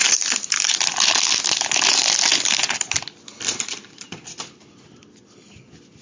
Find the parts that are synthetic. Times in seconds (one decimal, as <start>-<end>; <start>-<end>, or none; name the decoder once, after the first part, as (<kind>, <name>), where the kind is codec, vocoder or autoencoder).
none